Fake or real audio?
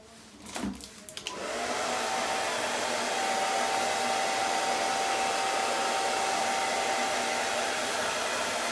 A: real